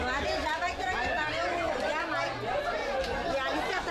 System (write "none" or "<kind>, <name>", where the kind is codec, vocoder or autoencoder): none